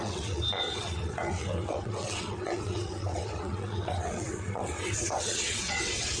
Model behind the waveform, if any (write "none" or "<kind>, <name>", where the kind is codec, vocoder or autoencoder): vocoder, WaveNeXt